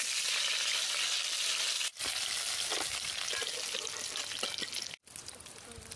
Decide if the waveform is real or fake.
real